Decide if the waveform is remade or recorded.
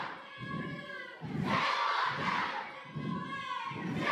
recorded